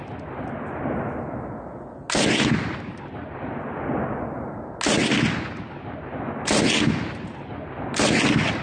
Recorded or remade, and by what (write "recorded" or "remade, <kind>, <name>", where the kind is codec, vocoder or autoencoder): recorded